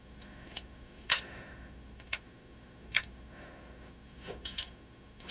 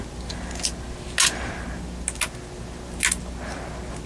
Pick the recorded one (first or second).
second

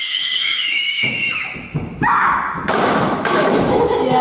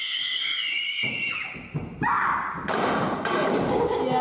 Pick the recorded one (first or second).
second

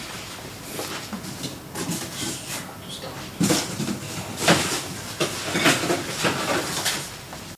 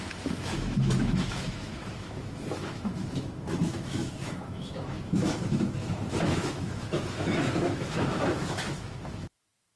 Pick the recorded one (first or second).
first